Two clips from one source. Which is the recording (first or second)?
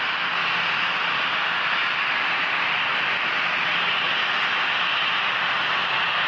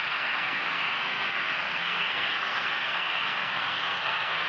first